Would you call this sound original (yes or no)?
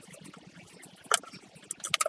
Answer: yes